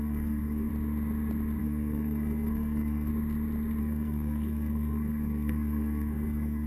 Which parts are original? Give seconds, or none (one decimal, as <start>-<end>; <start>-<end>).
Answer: 0.7-1.6; 3.1-3.8